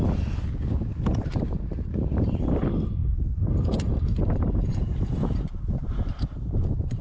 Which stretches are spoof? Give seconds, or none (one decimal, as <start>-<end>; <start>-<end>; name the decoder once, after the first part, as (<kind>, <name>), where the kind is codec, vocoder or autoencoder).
0.9-2.6 (vocoder, BigVGAN v2); 3.0-7.0